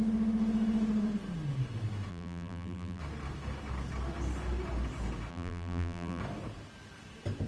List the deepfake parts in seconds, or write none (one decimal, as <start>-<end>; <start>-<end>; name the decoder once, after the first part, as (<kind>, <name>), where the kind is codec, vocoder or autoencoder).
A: 2.1-3.0 (vocoder, BigVGAN v2); 5.3-6.2